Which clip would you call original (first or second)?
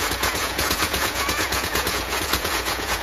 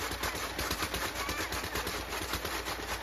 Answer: second